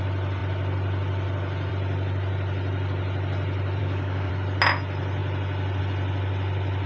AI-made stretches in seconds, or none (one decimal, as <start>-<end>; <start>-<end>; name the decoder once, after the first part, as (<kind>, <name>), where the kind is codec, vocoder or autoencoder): 3.8-4.3 (codec, DAC)